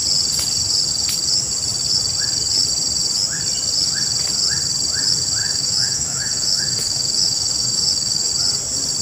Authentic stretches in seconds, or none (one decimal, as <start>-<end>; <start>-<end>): 0.0-5.4; 8.3-9.0